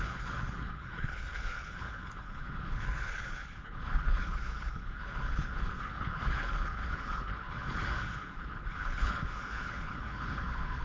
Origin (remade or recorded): remade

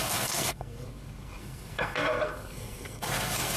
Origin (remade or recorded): remade